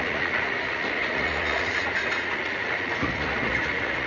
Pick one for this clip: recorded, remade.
remade